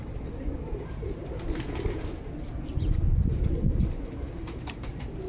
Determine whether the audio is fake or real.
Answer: fake